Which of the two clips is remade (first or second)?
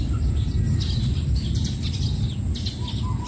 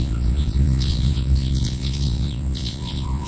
second